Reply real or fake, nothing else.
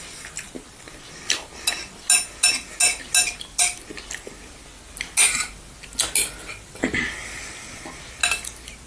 real